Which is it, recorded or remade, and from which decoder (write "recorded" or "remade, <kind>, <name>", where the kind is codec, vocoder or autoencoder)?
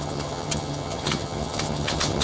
remade, vocoder, HiFi-GAN